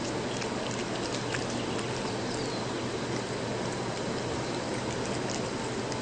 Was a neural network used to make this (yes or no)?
no